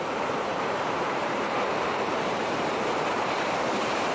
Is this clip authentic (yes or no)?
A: no